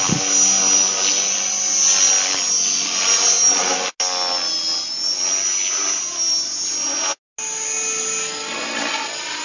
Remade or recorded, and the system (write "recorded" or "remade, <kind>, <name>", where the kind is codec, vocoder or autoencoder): recorded